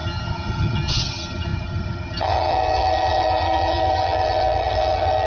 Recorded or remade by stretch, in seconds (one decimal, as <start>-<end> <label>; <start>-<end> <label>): 0.0-5.3 remade